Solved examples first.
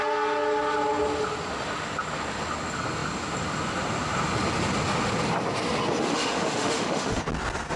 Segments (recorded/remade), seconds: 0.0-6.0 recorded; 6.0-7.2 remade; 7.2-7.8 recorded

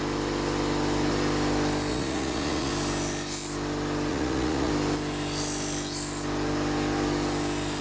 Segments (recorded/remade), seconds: 0.0-1.9 recorded; 1.9-2.7 remade; 2.7-4.1 recorded; 4.1-4.7 remade; 4.7-7.8 recorded

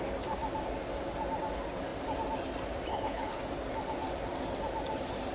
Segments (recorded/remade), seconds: 0.0-2.9 recorded; 2.9-3.4 remade; 3.4-5.3 recorded

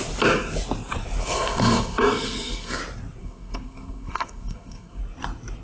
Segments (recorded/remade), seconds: 0.0-1.2 recorded; 1.2-2.8 remade; 2.8-3.2 recorded; 3.2-5.0 remade; 5.0-5.6 recorded

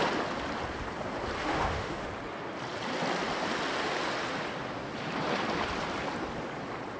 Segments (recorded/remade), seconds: 0.0-1.4 recorded; 1.4-2.1 remade; 2.1-7.0 recorded

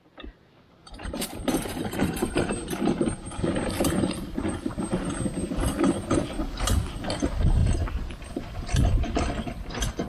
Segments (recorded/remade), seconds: 0.0-0.8 recorded; 0.8-2.7 remade; 2.7-10.1 recorded

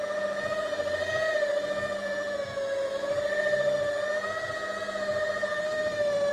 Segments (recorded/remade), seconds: 0.0-5.5 recorded; 5.5-6.3 remade

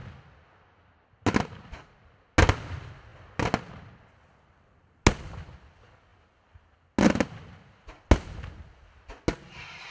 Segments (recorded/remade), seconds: 0.0-9.9 recorded